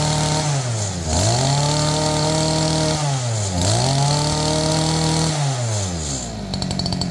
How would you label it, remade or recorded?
recorded